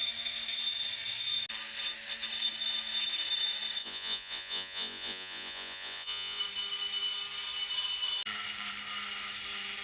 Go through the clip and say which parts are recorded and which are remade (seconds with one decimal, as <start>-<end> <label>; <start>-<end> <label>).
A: 0.0-3.8 recorded; 3.8-6.4 remade; 6.4-9.8 recorded